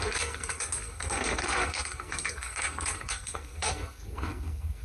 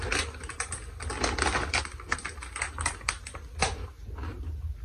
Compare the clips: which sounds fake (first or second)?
first